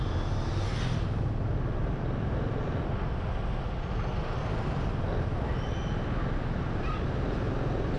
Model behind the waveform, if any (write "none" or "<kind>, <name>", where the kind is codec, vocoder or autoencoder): none